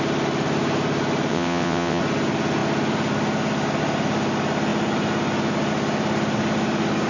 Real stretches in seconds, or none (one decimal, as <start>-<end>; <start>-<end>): 0.0-1.3; 2.0-7.1